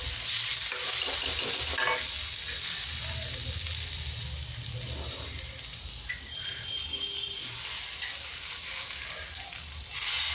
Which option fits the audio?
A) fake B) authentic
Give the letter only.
B